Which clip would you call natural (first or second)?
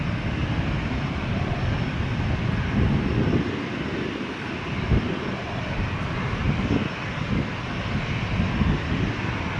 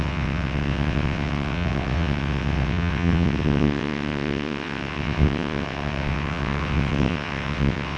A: first